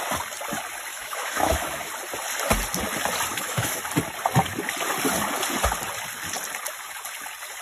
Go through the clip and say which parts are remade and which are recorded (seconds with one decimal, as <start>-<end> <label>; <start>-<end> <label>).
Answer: 0.0-0.9 recorded; 0.9-1.9 remade; 1.9-3.3 recorded; 3.3-3.8 remade; 3.8-7.6 recorded